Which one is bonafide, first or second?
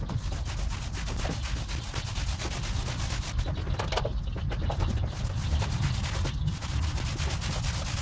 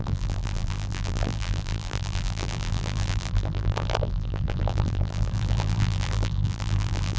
first